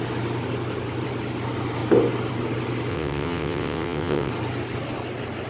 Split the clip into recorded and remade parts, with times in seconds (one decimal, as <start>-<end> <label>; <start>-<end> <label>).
0.0-2.9 recorded; 2.9-4.3 remade; 4.3-5.5 recorded